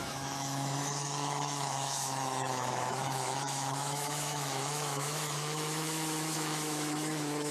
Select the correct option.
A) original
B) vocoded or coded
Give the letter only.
B